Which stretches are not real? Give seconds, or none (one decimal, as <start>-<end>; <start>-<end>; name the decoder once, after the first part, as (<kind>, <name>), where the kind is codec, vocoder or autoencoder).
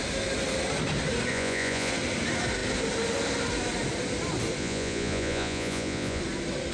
1.3-1.9 (vocoder, Vocos); 4.6-6.2